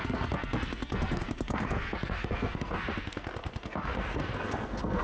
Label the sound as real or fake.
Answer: fake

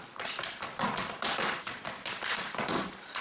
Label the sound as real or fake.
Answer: real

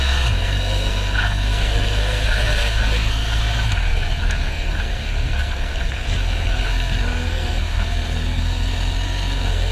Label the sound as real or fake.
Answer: fake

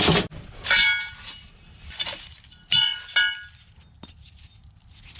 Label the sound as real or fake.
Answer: real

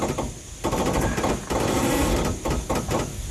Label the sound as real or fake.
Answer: real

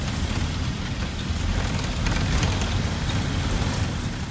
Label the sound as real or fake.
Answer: real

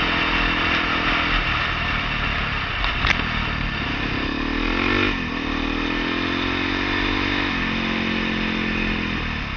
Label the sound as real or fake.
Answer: real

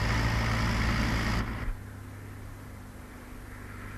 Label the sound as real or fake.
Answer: real